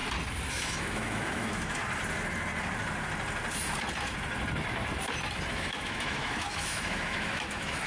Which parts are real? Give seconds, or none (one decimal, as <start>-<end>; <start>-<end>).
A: 0.0-0.5; 1.8-5.5